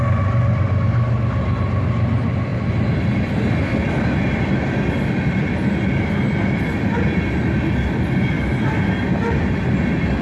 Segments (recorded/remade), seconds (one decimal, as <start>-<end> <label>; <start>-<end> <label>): 0.0-10.2 recorded